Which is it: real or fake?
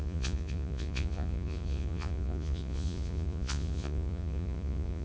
fake